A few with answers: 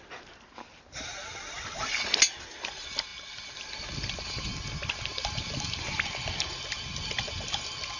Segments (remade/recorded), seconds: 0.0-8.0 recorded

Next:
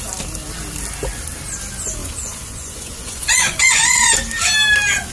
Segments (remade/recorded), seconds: 0.0-2.0 recorded; 2.0-4.1 remade; 4.1-5.1 recorded

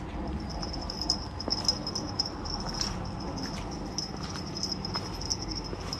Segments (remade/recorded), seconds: 0.0-6.0 recorded

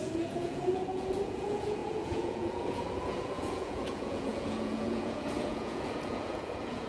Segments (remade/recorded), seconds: 0.0-6.9 remade

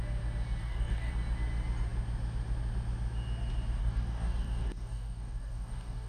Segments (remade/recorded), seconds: 0.0-0.6 recorded; 0.6-1.1 remade; 1.1-3.8 recorded; 3.8-6.1 remade

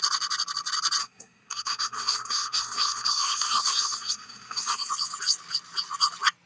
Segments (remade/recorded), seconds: 0.0-1.0 recorded; 1.0-4.9 remade; 4.9-6.5 recorded